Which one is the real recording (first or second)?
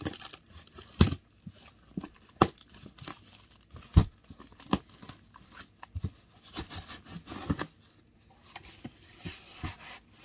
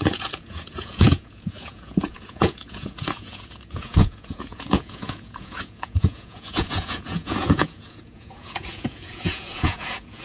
first